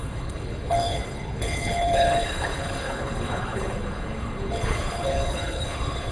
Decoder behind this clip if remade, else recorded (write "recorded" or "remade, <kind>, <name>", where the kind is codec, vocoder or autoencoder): remade, codec, HILCodec